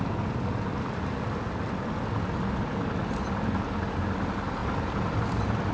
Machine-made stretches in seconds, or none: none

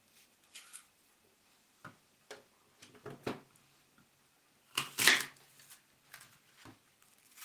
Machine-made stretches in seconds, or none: none

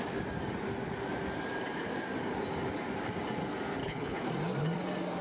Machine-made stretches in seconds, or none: 3.8-4.3 (codec, HILCodec)

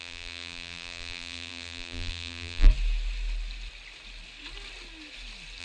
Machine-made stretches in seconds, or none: 0.0-2.7 (vocoder, BigVGAN v2)